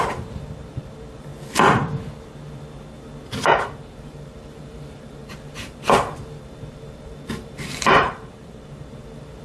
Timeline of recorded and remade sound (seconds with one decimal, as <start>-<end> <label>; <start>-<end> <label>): 0.0-1.3 remade; 1.3-3.5 recorded; 3.5-9.4 remade